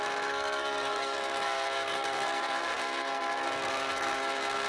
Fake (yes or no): yes